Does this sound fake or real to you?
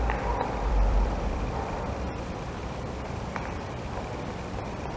fake